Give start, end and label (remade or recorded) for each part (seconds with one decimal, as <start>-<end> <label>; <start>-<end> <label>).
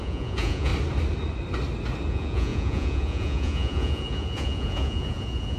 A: 0.0-0.7 remade; 0.7-2.1 recorded; 2.1-5.6 remade